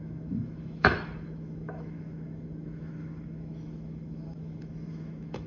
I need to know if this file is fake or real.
fake